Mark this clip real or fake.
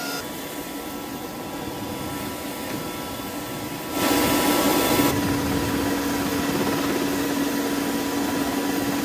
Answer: real